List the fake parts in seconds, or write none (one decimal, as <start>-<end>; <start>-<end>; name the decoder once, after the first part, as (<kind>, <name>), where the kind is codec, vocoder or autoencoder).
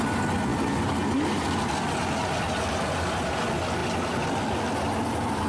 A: none